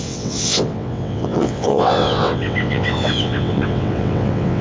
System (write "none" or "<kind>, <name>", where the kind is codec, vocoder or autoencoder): vocoder, WaveNeXt